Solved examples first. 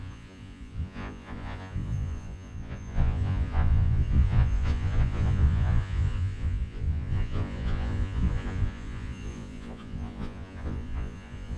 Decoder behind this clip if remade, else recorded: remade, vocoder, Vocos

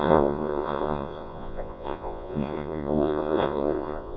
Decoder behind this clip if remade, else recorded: remade, vocoder, Vocos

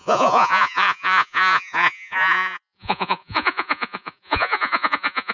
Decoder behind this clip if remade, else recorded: remade, vocoder, Vocos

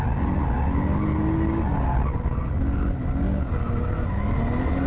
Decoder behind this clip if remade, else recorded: recorded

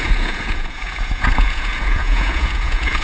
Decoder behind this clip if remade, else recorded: remade, vocoder, Vocos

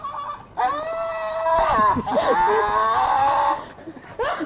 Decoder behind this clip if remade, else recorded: recorded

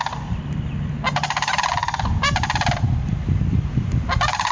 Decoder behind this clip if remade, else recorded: recorded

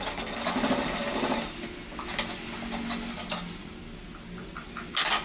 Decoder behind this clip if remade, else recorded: recorded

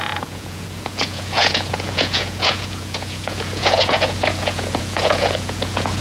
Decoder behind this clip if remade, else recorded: remade, vocoder, Vocos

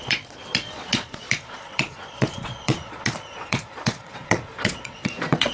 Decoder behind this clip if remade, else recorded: remade, vocoder, Vocos